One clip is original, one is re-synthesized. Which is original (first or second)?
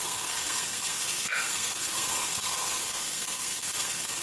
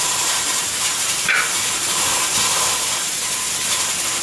second